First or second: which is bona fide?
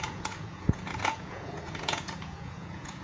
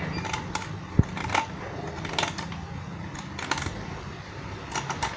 second